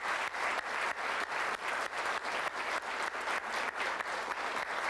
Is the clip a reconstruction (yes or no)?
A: yes